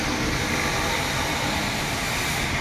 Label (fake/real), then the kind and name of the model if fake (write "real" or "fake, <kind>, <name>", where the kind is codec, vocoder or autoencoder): real